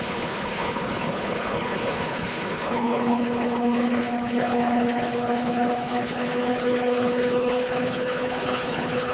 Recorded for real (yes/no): no